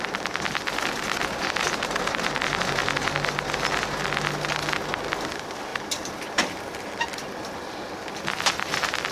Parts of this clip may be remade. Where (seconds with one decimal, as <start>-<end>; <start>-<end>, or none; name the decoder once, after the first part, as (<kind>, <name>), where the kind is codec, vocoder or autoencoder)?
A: 5.7-8.0 (vocoder, BigVGAN v2)